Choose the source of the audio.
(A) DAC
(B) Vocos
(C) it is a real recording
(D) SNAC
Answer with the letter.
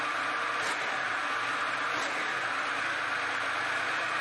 C